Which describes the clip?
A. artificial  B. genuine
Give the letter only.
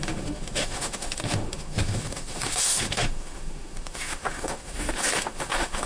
A